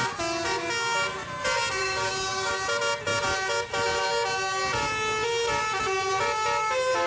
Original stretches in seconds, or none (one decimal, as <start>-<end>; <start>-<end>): 0.0-1.8; 2.5-7.1